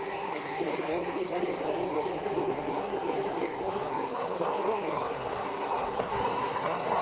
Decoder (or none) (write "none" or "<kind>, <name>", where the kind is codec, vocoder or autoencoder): codec, SNAC